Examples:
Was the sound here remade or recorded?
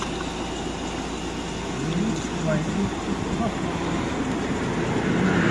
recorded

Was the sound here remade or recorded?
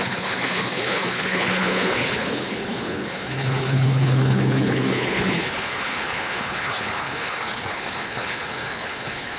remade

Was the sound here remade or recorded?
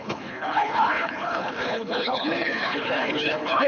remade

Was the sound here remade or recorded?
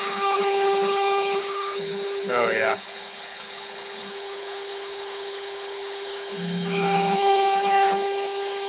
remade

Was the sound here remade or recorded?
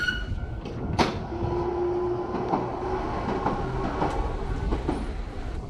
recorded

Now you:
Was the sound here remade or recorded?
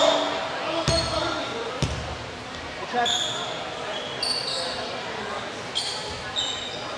recorded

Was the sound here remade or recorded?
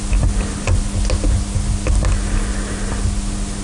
recorded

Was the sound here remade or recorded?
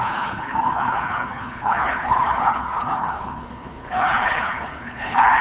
remade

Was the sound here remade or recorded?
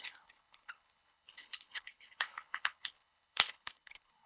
remade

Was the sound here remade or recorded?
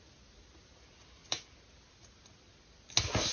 recorded